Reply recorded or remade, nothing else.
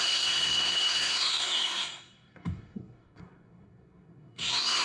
remade